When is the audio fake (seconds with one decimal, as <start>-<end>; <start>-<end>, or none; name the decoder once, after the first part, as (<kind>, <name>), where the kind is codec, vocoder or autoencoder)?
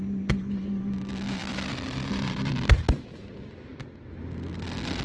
1.4-3.2 (vocoder, BigVGAN v2)